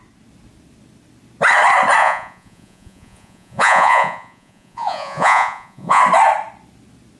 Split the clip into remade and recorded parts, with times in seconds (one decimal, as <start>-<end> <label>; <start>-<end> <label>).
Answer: 0.0-2.0 recorded; 2.0-6.0 remade; 6.0-7.2 recorded